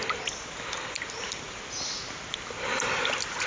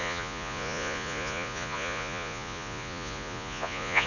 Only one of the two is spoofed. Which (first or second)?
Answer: second